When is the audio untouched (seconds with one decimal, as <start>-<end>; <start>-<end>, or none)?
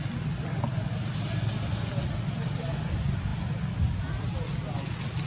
0.0-5.3